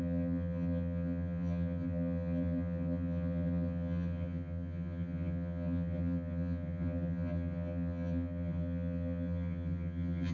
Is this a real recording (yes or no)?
no